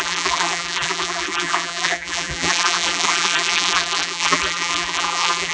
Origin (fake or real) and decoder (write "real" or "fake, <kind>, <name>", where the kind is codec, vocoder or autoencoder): fake, vocoder, BigVGAN v2